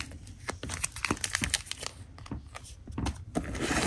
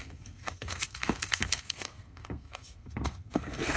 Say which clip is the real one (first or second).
first